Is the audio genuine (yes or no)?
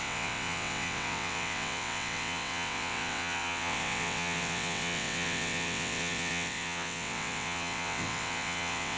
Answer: no